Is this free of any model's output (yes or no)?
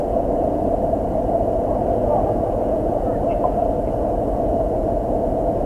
no